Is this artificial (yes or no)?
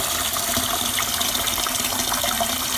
no